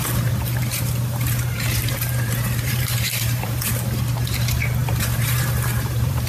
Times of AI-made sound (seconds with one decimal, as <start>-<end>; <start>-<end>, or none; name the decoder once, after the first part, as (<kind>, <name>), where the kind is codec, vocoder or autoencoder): 0.6-3.7 (vocoder, BigVGAN v2); 4.8-6.3